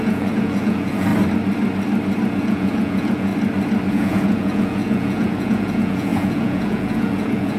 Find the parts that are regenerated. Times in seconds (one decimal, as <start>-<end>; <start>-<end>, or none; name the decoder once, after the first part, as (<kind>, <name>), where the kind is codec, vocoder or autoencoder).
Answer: 0.0-1.1 (vocoder, Vocos); 2.4-3.3; 3.9-7.6